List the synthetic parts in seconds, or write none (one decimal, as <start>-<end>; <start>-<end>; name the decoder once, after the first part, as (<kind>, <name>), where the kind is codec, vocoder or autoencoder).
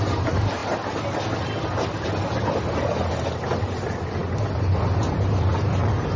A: none